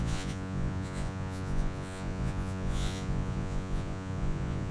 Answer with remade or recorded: remade